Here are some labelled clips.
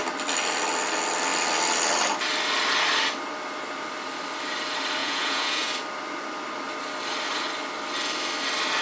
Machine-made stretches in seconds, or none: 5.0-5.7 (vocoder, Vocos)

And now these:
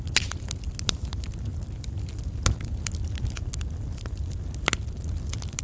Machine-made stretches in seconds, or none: none

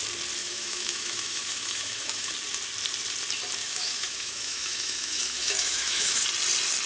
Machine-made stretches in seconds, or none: 0.4-2.3 (autoencoder, DAC-VAE); 3.6-6.2

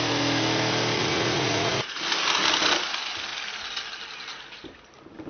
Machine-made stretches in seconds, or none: 0.9-2.0 (vocoder, Vocos)

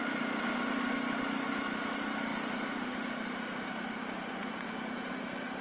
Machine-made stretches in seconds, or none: 4.4-5.1 (vocoder, Vocos)